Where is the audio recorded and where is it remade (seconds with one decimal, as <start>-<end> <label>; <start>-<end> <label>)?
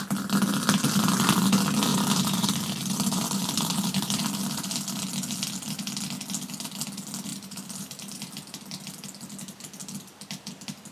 0.0-1.9 recorded; 1.9-4.8 remade; 4.8-7.3 recorded; 7.3-8.2 remade; 8.2-10.9 recorded